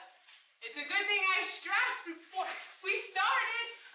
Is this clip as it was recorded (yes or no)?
no